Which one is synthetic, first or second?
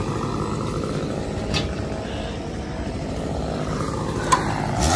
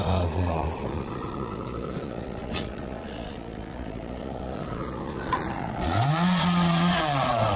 second